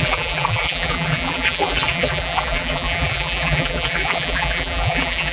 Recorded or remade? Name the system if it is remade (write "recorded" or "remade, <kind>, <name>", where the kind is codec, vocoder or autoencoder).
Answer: remade, vocoder, BigVGAN v2